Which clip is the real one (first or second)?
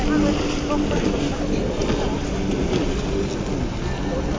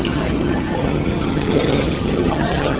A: first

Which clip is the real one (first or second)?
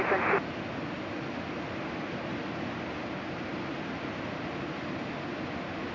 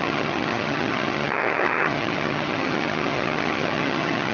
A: first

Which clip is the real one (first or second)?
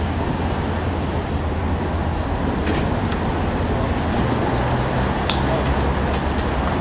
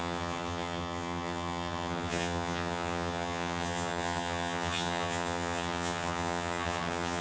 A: first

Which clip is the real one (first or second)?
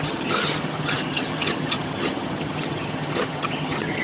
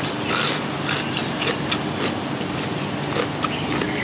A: second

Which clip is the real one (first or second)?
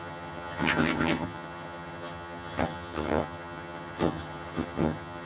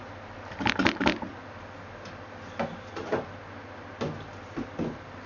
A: second